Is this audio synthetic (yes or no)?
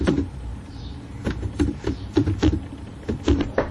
yes